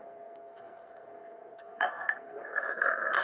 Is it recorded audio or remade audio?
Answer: remade